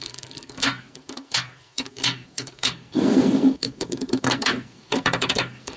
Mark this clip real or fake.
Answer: fake